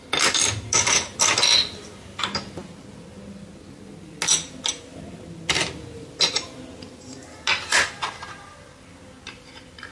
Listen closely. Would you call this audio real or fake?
real